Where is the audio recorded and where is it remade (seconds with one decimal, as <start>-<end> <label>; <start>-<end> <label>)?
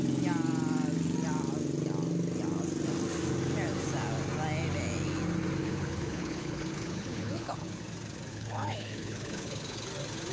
0.0-5.6 recorded; 5.6-7.8 remade; 7.8-8.3 recorded; 8.3-9.9 remade; 9.9-10.3 recorded